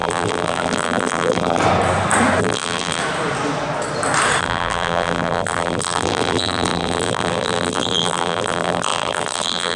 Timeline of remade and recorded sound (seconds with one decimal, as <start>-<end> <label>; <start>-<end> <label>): 0.0-1.6 remade; 1.6-2.4 recorded; 2.4-3.0 remade; 3.0-4.4 recorded; 4.4-9.8 remade